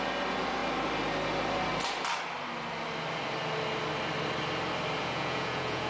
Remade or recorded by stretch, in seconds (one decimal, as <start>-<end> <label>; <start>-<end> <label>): 0.0-5.0 recorded; 5.0-5.9 remade